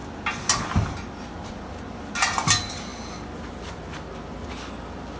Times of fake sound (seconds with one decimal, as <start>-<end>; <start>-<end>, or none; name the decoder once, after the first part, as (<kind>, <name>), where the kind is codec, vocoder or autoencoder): none